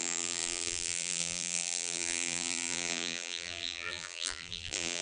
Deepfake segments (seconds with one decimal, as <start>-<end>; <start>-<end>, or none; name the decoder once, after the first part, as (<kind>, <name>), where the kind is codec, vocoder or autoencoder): 0.0-5.0 (vocoder, BigVGAN v2)